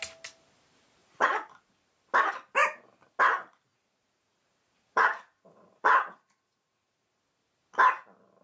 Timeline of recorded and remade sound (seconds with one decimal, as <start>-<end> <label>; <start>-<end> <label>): 0.0-1.0 recorded; 1.0-1.7 remade; 1.7-3.7 recorded; 3.7-7.2 remade; 7.2-8.4 recorded